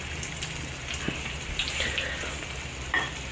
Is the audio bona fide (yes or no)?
yes